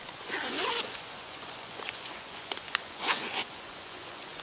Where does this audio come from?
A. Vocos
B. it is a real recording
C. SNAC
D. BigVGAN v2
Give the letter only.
A